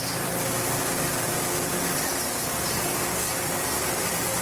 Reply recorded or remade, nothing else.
recorded